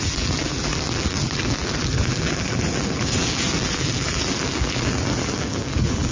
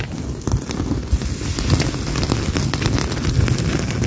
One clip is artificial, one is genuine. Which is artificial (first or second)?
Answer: first